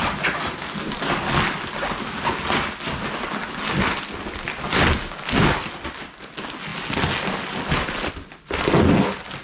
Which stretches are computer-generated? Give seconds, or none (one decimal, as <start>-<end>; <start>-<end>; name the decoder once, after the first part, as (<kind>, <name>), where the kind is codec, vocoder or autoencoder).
none